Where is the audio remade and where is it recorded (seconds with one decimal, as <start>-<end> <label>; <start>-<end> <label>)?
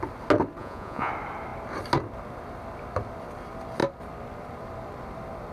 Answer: 0.0-0.6 recorded; 0.6-1.1 remade; 1.1-5.5 recorded